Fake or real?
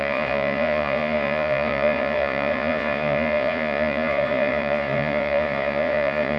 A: fake